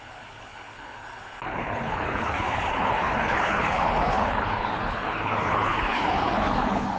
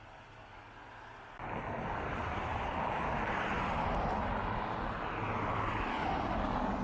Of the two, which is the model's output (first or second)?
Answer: first